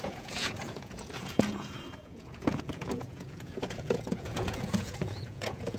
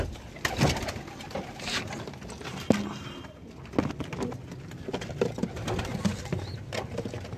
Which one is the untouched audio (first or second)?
second